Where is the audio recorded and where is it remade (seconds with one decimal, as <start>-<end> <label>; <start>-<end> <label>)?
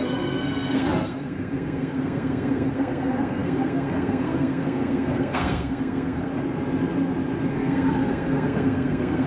0.0-6.3 remade; 6.3-7.5 recorded; 7.5-9.3 remade